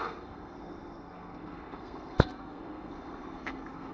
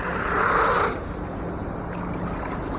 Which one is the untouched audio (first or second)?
second